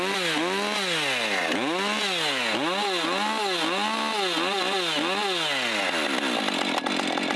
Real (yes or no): yes